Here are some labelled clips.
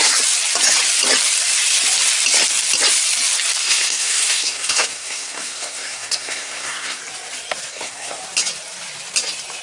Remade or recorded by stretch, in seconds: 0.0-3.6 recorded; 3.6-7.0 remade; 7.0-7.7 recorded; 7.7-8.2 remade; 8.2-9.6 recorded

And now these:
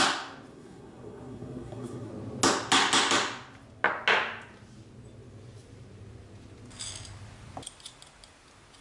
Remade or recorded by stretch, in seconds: 0.0-0.5 recorded; 0.5-2.1 remade; 2.1-8.8 recorded

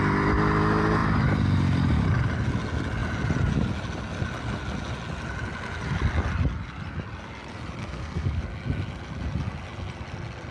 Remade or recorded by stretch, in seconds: 0.0-7.8 recorded; 7.8-8.4 remade; 8.4-10.5 recorded

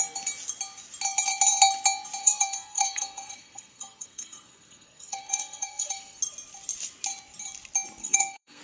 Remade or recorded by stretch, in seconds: 0.0-2.2 recorded; 2.2-6.2 remade; 6.2-8.0 recorded; 8.0-8.6 remade

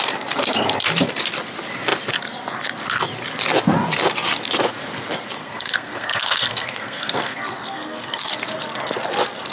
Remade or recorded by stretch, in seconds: 0.0-5.4 recorded; 5.4-8.2 remade; 8.2-9.5 recorded

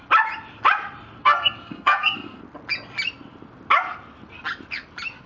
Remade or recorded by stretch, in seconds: 0.0-1.2 recorded; 1.2-2.4 remade; 2.4-5.3 recorded

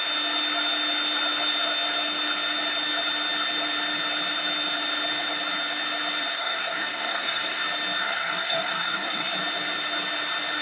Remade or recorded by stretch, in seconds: 0.0-6.4 recorded; 6.4-7.6 remade; 7.6-8.0 recorded; 8.0-9.3 remade; 9.3-10.6 recorded

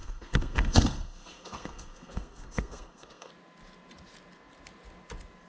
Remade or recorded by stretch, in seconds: 0.0-3.3 remade; 3.3-5.5 recorded